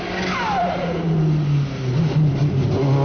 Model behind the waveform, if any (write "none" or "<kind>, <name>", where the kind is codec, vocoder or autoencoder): none